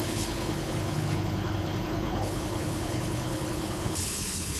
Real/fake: fake